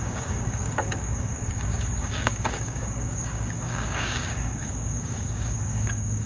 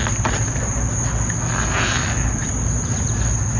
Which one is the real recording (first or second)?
second